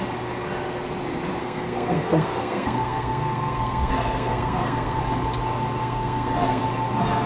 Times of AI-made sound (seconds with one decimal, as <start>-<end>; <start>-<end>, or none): 1.4-5.0; 5.8-6.6